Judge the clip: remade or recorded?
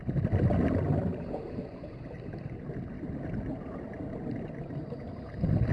recorded